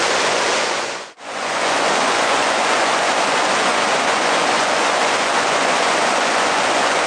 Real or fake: fake